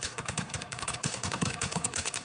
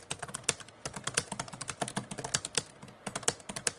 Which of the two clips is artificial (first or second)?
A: first